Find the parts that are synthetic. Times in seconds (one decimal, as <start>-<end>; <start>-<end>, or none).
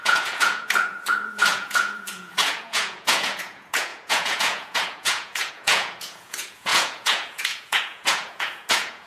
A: 0.0-9.1